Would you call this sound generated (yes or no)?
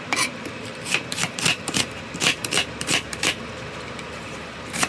yes